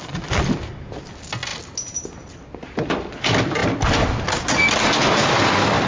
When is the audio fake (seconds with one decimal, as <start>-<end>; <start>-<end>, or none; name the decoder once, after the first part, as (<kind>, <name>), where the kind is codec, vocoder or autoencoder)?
none